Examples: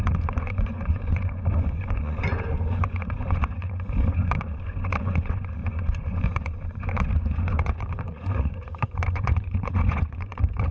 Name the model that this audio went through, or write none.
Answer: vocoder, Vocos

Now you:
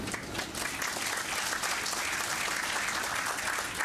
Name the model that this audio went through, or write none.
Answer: none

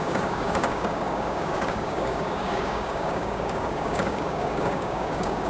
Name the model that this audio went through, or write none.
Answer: codec, DAC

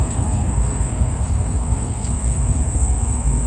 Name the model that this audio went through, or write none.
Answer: codec, SNAC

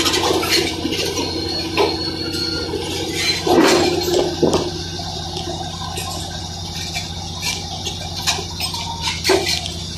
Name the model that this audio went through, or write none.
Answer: none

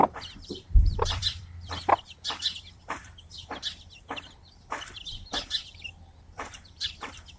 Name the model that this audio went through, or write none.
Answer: vocoder, BigVGAN v2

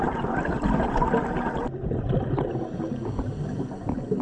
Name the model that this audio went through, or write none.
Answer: none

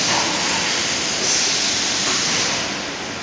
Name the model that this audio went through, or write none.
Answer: none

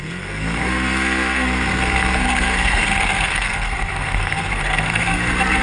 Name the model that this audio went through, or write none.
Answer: codec, SNAC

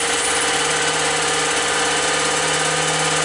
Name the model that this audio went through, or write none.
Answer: none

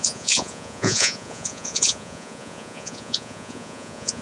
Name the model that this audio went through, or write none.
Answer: vocoder, Vocos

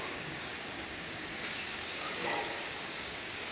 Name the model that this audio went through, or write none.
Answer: codec, DAC